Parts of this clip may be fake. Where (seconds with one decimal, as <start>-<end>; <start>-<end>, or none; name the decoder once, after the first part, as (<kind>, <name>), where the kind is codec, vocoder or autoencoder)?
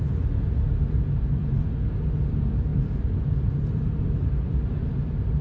2.7-4.0 (vocoder, BigVGAN v2)